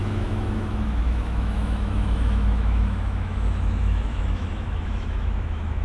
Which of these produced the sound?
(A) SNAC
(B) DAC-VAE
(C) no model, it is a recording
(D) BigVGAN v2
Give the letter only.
B